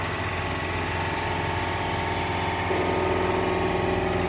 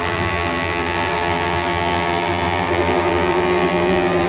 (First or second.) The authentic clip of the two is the first